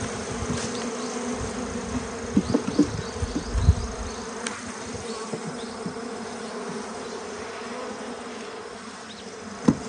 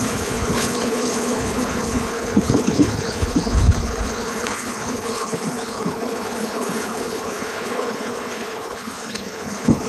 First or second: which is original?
first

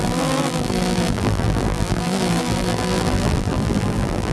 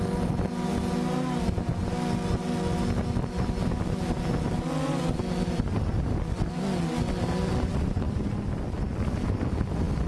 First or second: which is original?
second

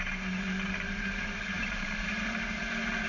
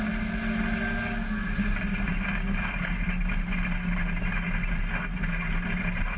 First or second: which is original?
second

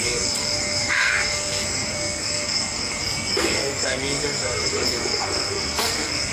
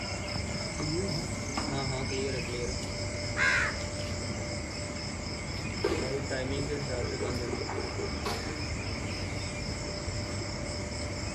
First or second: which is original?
second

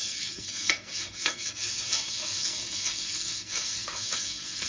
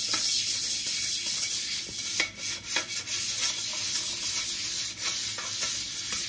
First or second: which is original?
second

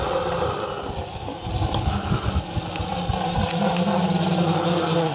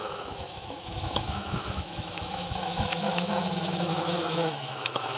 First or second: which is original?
first